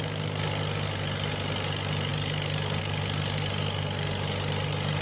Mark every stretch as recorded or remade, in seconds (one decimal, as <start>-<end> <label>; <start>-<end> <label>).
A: 0.0-5.0 recorded